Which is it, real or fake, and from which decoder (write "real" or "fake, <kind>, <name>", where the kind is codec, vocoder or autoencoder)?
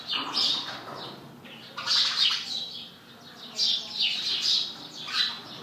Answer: real